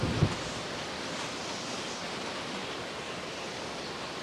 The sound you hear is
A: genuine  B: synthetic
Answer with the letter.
A